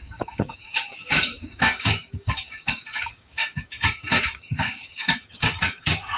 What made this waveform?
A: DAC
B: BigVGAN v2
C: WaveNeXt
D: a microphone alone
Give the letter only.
A